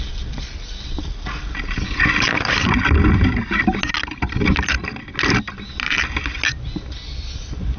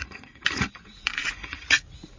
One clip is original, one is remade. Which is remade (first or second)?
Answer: second